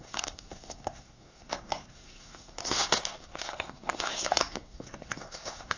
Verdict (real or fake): fake